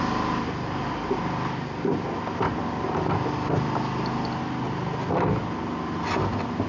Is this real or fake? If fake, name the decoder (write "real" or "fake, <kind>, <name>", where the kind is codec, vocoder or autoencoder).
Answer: real